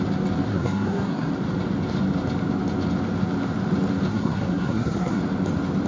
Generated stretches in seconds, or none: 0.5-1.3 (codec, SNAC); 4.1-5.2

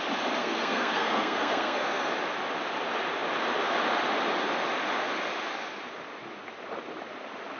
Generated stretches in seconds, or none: 0.4-2.1 (codec, SNAC)

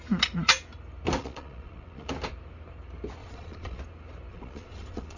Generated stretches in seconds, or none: 1.2-2.1 (vocoder, Vocos); 3.2-3.8; 4.3-5.2

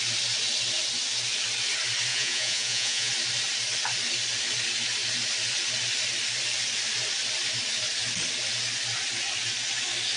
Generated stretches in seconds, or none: 2.1-3.1 (vocoder, Vocos)